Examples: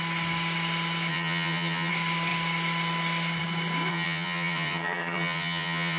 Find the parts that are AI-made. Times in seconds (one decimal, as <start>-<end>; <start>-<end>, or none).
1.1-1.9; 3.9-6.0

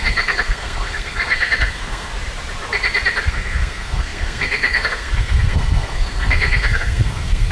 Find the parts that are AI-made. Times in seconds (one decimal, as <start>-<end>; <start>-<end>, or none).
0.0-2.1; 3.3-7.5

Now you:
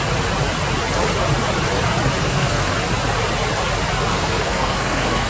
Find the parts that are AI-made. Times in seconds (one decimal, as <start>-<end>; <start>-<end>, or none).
2.2-2.7; 4.1-5.3